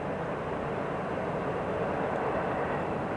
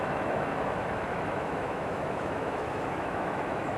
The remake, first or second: second